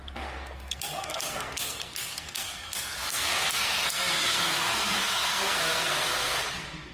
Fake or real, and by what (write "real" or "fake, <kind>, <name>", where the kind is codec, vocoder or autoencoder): fake, codec, SNAC